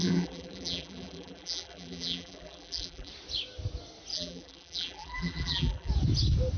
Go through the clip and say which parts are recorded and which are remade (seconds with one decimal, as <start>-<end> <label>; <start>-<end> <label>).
0.0-3.1 remade; 3.1-4.1 recorded; 4.1-5.9 remade; 5.9-6.6 recorded